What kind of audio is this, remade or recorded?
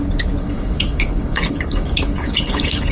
remade